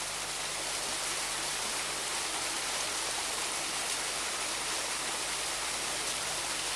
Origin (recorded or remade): remade